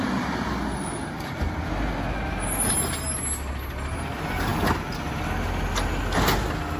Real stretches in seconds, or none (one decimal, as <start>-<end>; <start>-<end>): 0.0-6.8